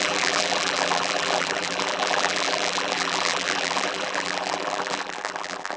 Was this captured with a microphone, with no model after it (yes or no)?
no